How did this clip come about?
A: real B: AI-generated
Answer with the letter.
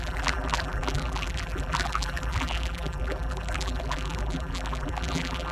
B